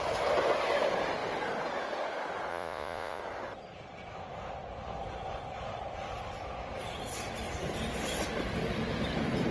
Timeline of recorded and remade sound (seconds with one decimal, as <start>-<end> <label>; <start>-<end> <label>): 0.0-2.5 recorded; 2.5-3.2 remade; 3.2-9.5 recorded